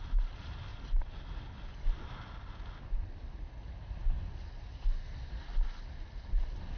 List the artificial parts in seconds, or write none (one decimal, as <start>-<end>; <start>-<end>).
none